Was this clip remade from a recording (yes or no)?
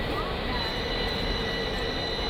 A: no